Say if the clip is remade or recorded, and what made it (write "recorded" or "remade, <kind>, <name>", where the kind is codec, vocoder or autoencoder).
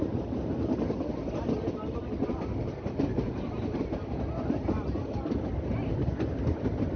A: recorded